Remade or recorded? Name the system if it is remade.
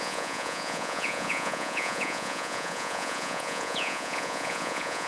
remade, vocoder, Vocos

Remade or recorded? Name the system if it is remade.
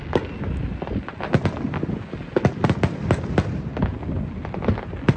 recorded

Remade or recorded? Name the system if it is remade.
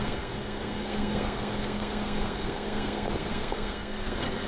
remade, codec, SNAC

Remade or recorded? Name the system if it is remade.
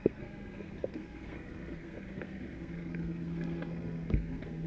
remade, codec, SNAC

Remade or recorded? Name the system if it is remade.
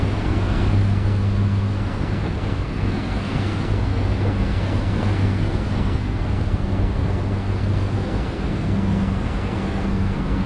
remade, codec, SNAC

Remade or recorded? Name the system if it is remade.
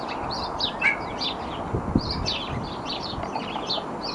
recorded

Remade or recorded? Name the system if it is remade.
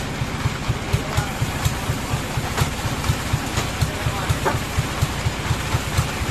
recorded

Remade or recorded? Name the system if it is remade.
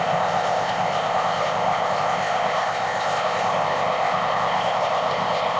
remade, codec, ZipCodec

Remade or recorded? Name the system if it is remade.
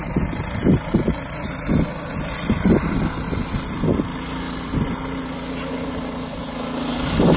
recorded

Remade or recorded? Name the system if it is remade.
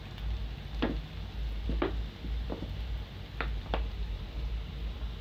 recorded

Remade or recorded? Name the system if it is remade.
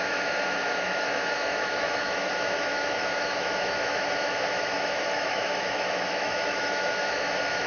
remade, autoencoder, DAC-VAE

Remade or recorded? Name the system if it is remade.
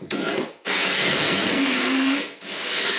remade, codec, SNAC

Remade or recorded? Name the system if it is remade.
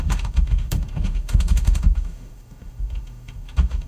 remade, autoencoder, DAC-VAE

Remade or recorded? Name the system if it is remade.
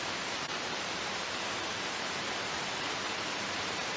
remade, vocoder, BigVGAN v2